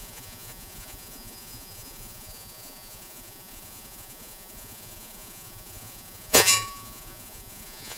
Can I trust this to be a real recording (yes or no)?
no